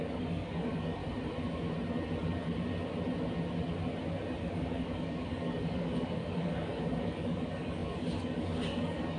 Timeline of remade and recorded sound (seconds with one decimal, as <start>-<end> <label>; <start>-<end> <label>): 0.0-1.0 remade; 1.0-4.4 recorded; 4.4-9.2 remade